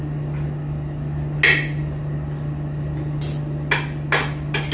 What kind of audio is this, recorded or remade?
recorded